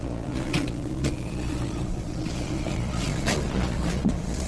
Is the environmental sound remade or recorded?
remade